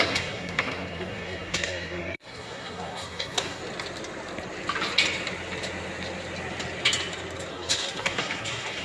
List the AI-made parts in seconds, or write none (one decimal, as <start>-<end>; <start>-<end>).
0.0-3.6; 7.5-8.8